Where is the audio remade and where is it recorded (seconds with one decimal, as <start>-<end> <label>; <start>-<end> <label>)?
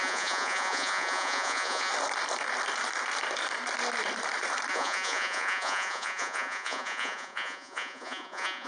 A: 0.0-1.9 remade; 1.9-4.7 recorded; 4.7-8.7 remade